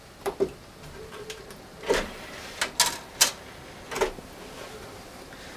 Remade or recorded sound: recorded